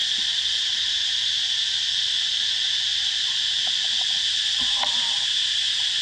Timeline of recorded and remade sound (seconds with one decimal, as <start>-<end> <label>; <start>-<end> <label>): 0.0-1.2 remade; 1.2-2.3 recorded; 2.3-6.0 remade